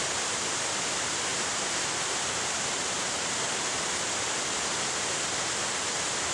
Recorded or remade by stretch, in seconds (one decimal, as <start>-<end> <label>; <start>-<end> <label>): 0.0-6.3 recorded